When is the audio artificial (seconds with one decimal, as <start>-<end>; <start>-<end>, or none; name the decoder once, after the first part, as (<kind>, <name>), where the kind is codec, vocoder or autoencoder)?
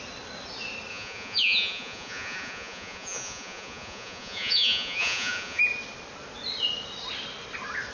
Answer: 0.9-5.6 (vocoder, Vocos)